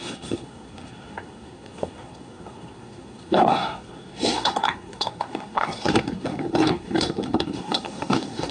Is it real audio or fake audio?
fake